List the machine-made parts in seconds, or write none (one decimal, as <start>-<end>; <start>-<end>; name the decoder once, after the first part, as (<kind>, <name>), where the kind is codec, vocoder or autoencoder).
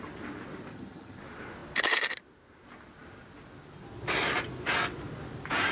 0.7-1.2 (vocoder, HiFi-GAN)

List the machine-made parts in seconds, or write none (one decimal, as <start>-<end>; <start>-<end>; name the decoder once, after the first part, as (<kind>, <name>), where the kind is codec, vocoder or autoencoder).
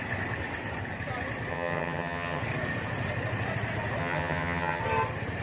1.5-2.4 (vocoder, HiFi-GAN); 4.0-4.8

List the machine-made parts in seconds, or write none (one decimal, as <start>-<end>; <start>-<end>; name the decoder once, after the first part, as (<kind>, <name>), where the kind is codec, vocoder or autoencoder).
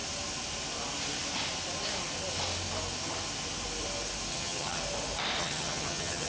4.3-4.8 (vocoder, HiFi-GAN); 5.4-6.3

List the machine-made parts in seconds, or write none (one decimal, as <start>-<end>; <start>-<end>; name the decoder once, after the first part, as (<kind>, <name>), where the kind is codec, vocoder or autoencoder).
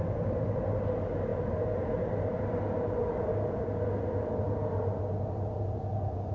none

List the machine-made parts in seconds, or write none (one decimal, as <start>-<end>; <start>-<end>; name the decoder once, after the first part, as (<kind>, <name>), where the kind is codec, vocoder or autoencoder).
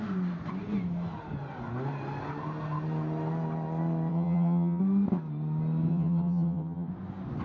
4.1-4.8 (vocoder, HiFi-GAN); 5.9-6.9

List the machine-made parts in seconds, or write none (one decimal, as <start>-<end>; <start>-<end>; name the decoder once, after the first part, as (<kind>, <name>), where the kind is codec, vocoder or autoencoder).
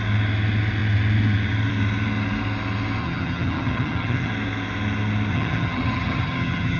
3.0-4.3 (vocoder, HiFi-GAN); 5.3-6.8